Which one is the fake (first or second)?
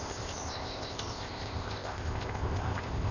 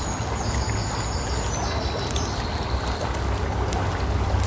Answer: first